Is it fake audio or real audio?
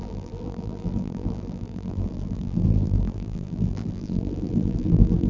fake